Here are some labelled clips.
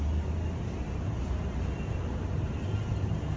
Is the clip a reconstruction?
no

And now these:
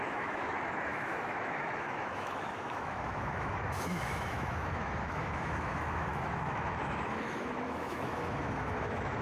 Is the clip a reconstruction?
yes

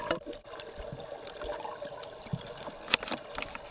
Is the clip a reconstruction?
no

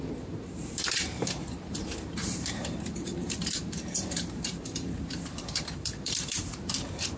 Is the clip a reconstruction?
yes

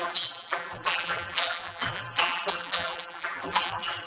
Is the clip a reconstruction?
yes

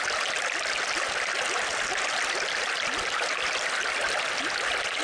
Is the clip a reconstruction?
no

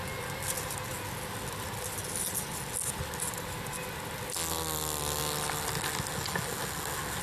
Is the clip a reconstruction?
no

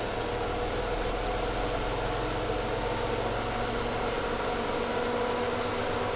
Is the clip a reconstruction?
no